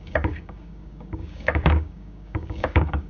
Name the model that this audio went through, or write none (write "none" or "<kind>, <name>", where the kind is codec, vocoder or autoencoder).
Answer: codec, DAC